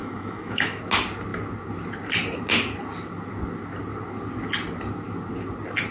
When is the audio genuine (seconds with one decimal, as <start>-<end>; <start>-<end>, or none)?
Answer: 0.8-5.9

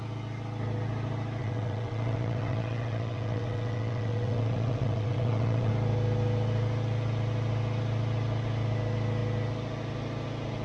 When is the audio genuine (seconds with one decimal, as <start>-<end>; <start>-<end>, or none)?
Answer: 0.0-1.4; 5.7-10.6

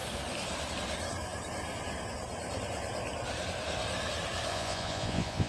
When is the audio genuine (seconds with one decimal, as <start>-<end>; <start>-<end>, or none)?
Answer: 0.0-4.5

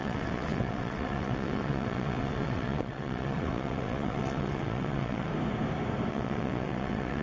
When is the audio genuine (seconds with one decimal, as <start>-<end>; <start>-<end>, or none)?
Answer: 5.3-6.1

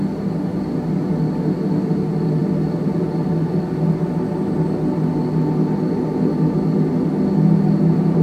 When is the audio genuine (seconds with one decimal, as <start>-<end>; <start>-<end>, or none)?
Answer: 0.0-8.2

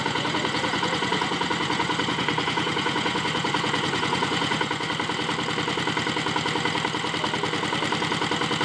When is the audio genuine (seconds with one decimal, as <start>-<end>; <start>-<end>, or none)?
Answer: 4.9-8.6

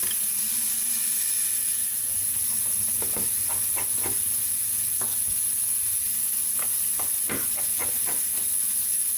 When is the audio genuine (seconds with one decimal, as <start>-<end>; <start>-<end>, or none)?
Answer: 0.0-1.9; 3.5-6.5; 7.6-9.2

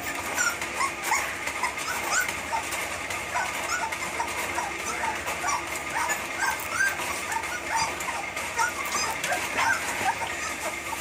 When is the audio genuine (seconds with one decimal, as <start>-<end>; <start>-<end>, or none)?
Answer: 0.0-11.0